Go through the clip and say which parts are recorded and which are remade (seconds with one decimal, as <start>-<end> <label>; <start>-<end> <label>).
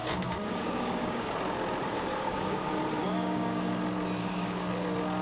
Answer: 0.0-1.3 remade; 1.3-1.8 recorded; 1.8-2.6 remade; 2.6-3.0 recorded; 3.0-3.6 remade; 3.6-4.2 recorded; 4.2-4.7 remade; 4.7-5.2 recorded